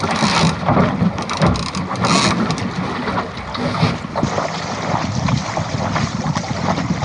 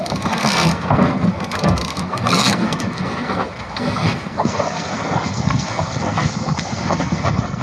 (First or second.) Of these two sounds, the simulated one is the second